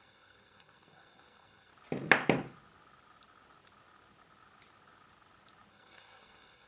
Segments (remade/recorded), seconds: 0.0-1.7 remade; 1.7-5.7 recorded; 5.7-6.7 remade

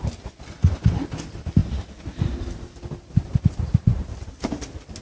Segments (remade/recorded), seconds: 0.0-5.0 recorded

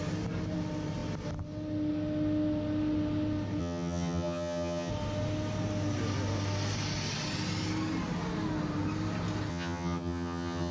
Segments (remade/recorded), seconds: 0.0-3.6 recorded; 3.6-4.9 remade; 4.9-9.5 recorded; 9.5-10.7 remade

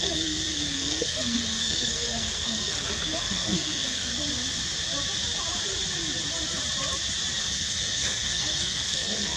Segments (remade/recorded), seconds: 0.0-4.1 remade; 4.1-7.4 recorded; 7.4-9.4 remade

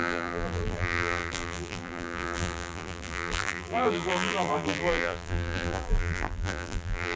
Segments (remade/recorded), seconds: 0.0-7.2 remade

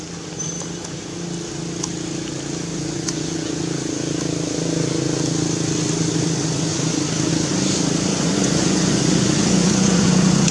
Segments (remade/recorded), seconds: 0.0-2.7 recorded; 2.7-3.6 remade; 3.6-8.1 recorded; 8.1-10.5 remade

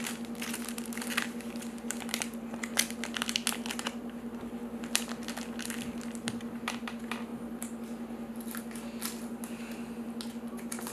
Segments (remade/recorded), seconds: 0.0-10.9 recorded

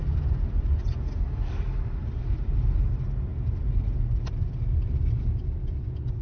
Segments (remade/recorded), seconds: 0.0-6.2 recorded